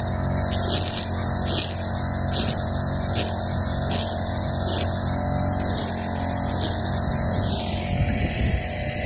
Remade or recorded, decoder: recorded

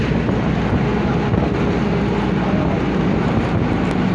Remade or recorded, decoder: recorded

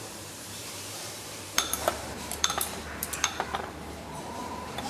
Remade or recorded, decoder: remade, vocoder, BigVGAN v2